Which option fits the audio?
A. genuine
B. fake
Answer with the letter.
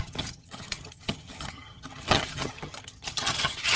B